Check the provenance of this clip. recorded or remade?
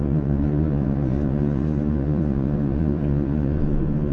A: remade